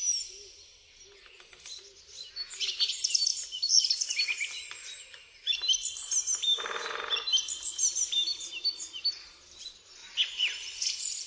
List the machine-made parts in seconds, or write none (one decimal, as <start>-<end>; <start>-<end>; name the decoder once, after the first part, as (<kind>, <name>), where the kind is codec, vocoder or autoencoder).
3.3-8.5 (vocoder, BigVGAN v2); 10.0-10.9